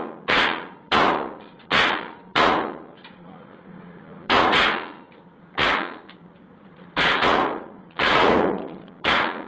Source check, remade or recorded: remade